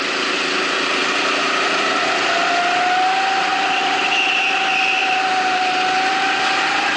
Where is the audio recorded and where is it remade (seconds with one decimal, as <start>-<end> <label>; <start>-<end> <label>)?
0.0-7.0 recorded